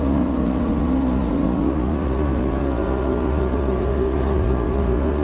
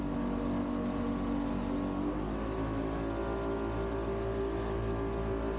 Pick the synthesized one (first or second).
first